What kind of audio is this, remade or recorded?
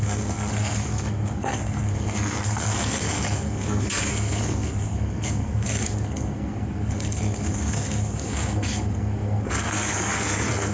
remade